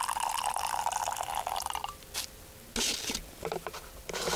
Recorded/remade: recorded